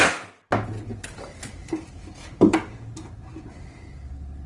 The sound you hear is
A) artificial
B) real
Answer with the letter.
B